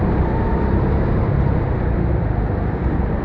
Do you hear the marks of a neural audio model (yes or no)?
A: no